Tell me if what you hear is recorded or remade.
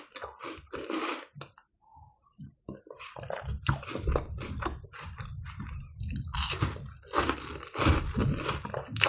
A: recorded